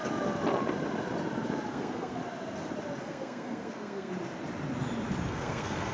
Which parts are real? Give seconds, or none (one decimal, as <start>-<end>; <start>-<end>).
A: 0.0-1.7; 2.2-3.0; 4.1-5.3